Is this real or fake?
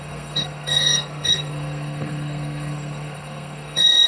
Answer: fake